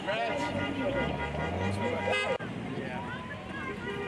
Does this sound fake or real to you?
real